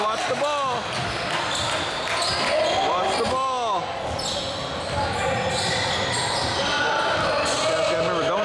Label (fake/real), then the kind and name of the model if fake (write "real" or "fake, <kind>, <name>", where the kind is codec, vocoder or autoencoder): real